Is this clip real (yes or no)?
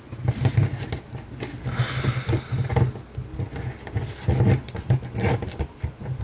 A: yes